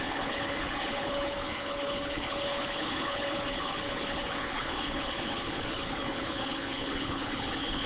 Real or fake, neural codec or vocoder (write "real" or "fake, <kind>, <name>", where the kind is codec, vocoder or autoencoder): fake, codec, HILCodec